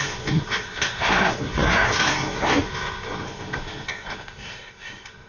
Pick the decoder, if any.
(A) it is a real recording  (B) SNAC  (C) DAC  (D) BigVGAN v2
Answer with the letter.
B